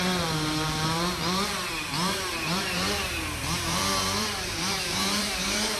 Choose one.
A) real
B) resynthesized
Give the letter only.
B